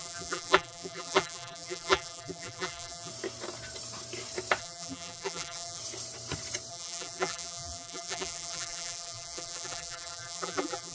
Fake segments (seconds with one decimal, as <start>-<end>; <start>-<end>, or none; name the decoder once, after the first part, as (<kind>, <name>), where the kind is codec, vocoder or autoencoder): 0.0-3.1 (vocoder, BigVGAN v2); 4.6-5.8; 6.7-10.9